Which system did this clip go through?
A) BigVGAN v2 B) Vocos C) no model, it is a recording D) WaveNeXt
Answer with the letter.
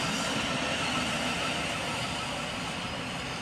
C